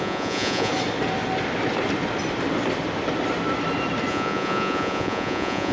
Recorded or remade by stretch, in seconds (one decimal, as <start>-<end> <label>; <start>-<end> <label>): 0.0-0.7 remade; 0.7-4.1 recorded; 4.1-5.7 remade